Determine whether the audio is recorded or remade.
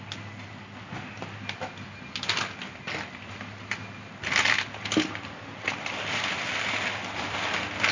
recorded